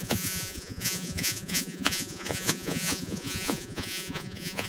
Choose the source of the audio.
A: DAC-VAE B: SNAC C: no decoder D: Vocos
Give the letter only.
D